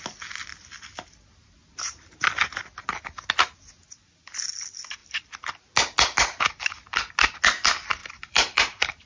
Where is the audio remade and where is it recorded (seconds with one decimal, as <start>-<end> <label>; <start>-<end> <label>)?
0.0-8.0 recorded; 8.0-9.1 remade